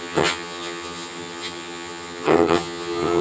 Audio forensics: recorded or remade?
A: remade